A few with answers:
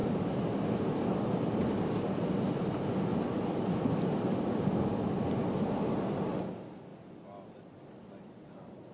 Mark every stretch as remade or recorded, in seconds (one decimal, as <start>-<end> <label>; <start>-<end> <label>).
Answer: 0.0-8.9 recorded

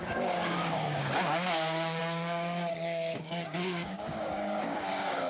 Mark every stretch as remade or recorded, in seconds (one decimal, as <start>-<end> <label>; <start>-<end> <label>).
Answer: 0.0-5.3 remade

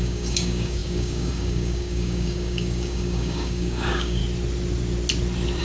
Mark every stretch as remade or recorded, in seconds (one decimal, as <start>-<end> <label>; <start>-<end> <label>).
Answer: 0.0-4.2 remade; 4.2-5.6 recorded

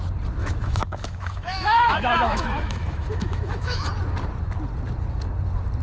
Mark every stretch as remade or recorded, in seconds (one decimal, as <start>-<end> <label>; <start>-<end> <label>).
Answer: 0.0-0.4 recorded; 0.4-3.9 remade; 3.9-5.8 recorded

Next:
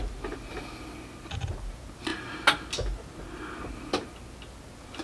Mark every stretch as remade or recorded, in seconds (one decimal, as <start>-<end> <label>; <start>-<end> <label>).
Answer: 0.0-5.0 recorded

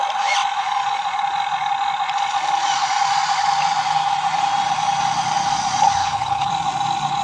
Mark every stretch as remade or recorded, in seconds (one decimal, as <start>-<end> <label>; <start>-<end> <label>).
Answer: 0.0-6.0 recorded; 6.0-6.5 remade; 6.5-7.2 recorded

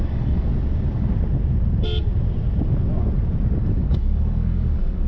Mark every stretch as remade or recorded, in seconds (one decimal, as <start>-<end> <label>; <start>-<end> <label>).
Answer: 0.0-0.5 remade; 0.5-3.6 recorded; 3.6-5.1 remade